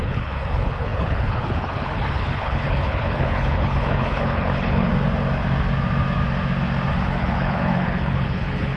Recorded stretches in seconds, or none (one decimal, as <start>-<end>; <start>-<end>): 4.9-6.9